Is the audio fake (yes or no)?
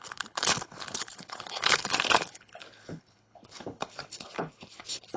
yes